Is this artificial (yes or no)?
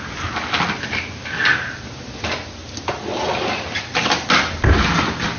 no